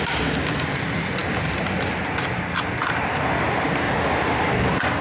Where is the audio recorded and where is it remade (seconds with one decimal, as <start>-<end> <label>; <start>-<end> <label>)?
0.0-5.0 recorded